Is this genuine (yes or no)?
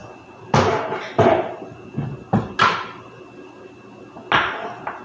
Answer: yes